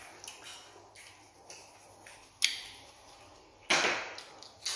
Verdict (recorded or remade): recorded